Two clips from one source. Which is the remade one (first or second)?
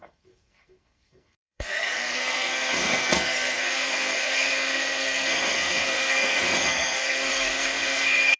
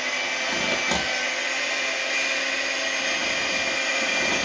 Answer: first